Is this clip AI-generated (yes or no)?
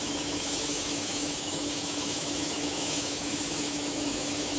yes